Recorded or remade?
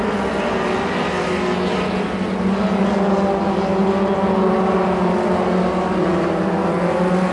recorded